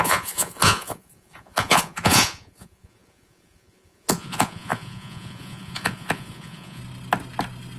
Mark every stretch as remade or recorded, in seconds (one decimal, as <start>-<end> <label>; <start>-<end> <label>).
0.0-6.8 remade; 6.8-7.8 recorded